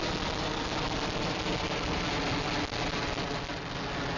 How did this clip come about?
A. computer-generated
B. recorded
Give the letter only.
B